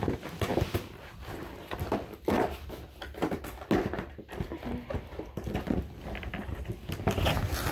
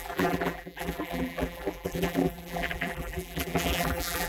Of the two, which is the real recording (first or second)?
first